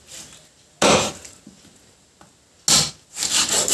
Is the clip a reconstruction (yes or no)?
no